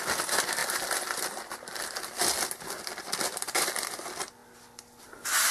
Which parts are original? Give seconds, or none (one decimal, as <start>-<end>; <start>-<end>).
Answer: 0.0-5.5